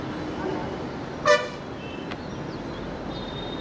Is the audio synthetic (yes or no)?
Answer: no